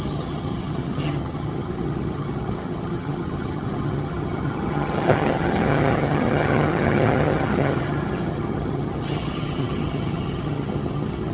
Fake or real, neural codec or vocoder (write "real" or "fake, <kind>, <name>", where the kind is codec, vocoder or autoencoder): fake, vocoder, HiFi-GAN